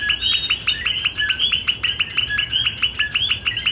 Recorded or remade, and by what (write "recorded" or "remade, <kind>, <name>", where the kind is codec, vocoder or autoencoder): recorded